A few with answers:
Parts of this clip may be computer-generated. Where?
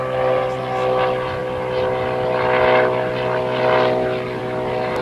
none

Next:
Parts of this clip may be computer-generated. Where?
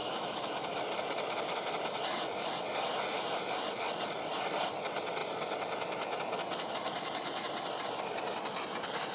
0.0-0.8 (autoencoder, DAC-VAE)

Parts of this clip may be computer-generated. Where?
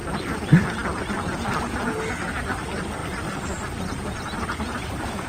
none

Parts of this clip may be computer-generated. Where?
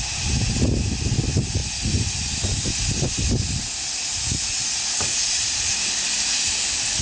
none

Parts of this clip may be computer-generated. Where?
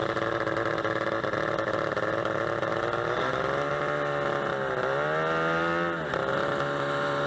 none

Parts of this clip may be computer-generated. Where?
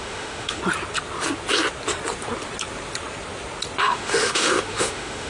0.0-0.6 (autoencoder, DAC-VAE); 3.8-5.3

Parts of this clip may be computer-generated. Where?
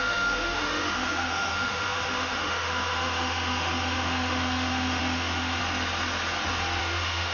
0.0-5.6 (autoencoder, DAC-VAE); 6.8-7.3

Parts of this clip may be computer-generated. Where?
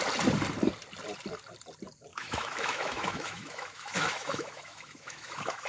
2.1-5.7 (autoencoder, DAC-VAE)